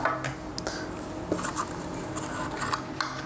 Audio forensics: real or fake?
real